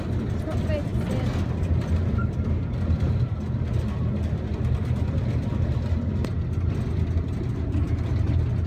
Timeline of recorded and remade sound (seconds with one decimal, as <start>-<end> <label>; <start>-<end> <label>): 0.0-0.9 recorded; 0.9-2.5 remade; 2.5-8.7 recorded